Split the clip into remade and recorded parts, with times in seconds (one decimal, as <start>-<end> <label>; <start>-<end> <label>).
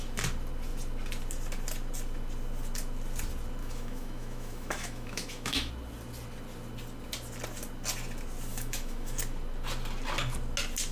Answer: 0.0-3.6 recorded; 3.6-5.7 remade; 5.7-8.5 recorded; 8.5-9.2 remade; 9.2-10.9 recorded